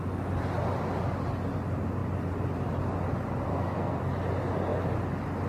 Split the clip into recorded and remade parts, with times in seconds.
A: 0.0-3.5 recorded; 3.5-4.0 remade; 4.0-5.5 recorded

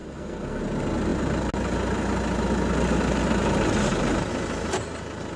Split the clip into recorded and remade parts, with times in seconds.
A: 0.0-0.6 remade; 0.6-5.4 recorded

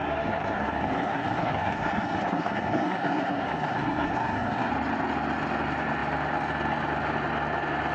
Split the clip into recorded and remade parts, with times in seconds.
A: 0.0-4.7 remade; 4.7-7.9 recorded

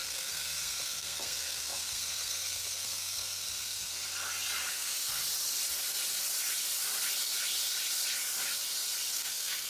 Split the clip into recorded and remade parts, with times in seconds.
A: 0.0-4.0 remade; 4.0-4.7 recorded; 4.7-5.2 remade; 5.2-9.1 recorded; 9.1-9.7 remade